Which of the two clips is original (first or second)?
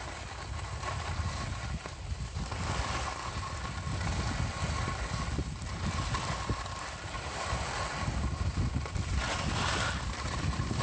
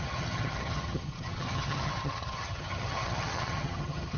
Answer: first